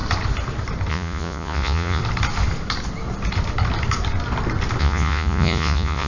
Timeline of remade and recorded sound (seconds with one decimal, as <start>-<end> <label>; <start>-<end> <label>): 0.0-0.9 recorded; 0.9-2.0 remade; 2.0-4.8 recorded; 4.8-6.1 remade